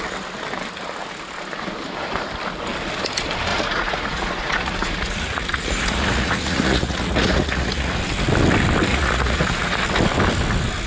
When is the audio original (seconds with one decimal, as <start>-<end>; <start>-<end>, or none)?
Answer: 0.0-3.5; 8.0-8.9; 9.8-10.9